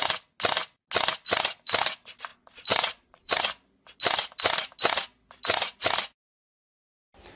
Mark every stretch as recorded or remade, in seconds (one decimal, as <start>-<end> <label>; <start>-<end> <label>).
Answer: 0.0-2.3 recorded; 2.3-3.3 remade; 3.3-7.4 recorded